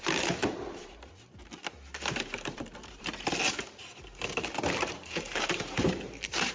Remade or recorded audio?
remade